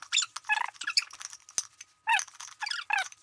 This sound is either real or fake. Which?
real